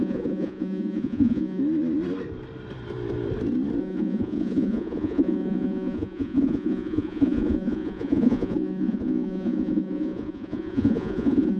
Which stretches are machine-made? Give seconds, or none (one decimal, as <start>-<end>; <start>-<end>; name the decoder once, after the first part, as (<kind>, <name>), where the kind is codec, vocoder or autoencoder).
0.0-1.6 (vocoder, Vocos); 3.8-11.6